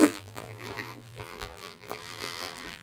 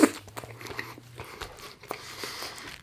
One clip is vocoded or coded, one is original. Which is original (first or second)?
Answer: second